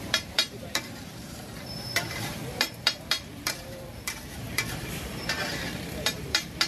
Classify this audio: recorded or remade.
remade